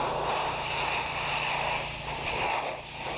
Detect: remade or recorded recorded